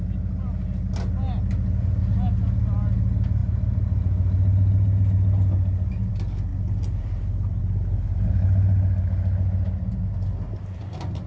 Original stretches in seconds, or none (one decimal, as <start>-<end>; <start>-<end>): 0.0-6.5; 7.6-11.3